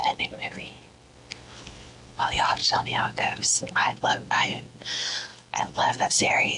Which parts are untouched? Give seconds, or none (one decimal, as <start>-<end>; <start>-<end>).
0.0-2.6; 3.6-6.6